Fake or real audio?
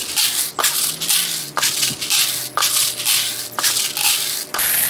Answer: real